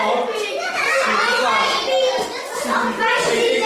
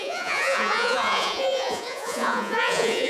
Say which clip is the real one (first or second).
first